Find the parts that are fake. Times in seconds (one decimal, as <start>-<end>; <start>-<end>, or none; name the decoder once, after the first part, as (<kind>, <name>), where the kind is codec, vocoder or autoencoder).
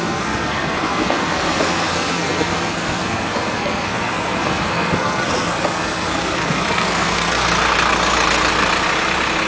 0.0-7.4 (codec, SNAC)